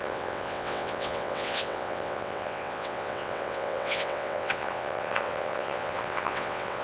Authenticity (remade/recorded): remade